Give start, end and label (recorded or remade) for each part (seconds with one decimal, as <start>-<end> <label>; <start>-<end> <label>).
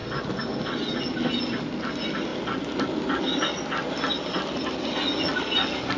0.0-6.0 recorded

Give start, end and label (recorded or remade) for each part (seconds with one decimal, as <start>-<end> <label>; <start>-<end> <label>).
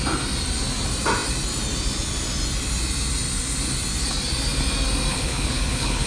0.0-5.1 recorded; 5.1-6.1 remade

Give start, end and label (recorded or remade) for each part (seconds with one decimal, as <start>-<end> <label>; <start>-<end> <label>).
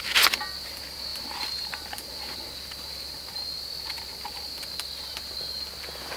0.0-1.1 recorded; 1.1-2.4 remade; 2.4-6.2 recorded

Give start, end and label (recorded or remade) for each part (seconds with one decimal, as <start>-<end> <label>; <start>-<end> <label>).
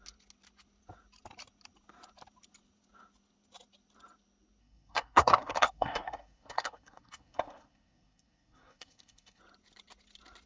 0.0-4.6 recorded; 4.6-9.4 remade; 9.4-10.5 recorded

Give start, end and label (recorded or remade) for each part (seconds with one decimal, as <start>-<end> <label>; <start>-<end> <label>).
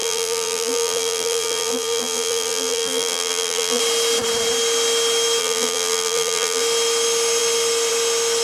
0.0-3.8 remade; 3.8-5.4 recorded; 5.4-6.6 remade; 6.6-8.4 recorded